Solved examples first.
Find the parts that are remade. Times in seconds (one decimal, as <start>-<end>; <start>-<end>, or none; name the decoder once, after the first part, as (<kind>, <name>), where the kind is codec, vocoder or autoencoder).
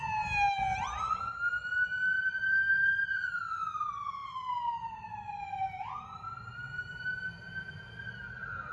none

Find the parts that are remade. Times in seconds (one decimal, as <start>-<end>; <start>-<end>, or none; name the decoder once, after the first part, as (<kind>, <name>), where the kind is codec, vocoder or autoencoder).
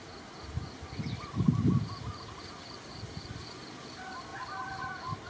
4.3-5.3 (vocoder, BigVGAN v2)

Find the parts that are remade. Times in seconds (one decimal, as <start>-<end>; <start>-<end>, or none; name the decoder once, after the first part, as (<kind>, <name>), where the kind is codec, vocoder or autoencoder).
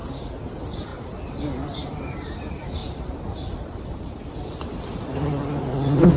2.8-4.8 (vocoder, BigVGAN v2)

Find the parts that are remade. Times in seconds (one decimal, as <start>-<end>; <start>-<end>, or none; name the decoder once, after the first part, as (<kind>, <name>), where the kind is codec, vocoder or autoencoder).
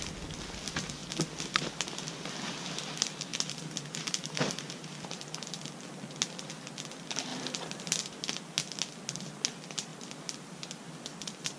7.3-8.0 (vocoder, BigVGAN v2)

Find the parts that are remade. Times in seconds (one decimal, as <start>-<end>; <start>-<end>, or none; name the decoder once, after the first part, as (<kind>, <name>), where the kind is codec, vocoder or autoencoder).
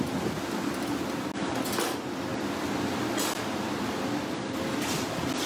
2.3-3.9 (vocoder, BigVGAN v2)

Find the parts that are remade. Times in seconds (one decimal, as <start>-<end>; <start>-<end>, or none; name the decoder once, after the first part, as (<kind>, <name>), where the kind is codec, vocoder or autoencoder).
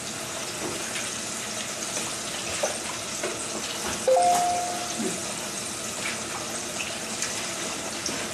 none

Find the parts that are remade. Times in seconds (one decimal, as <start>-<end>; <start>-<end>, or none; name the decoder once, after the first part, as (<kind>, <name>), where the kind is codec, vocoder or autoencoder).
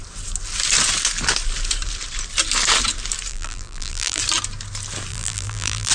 3.3-4.2 (vocoder, BigVGAN v2); 5.1-5.9